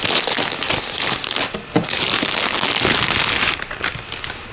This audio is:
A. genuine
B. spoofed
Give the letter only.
A